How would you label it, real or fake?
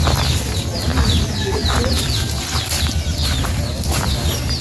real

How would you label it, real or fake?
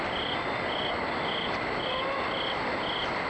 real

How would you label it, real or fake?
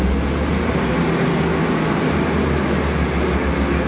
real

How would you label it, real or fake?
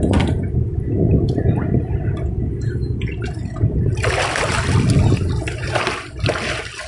real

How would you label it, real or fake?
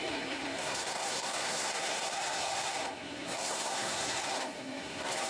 fake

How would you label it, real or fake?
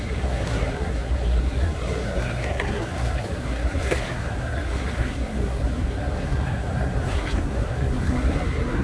fake